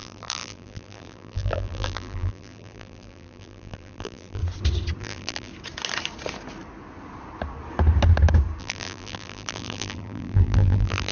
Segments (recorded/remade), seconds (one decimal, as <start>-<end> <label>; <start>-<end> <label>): 0.0-4.4 remade; 4.4-5.0 recorded; 5.0-5.5 remade; 5.5-8.6 recorded; 8.6-11.1 remade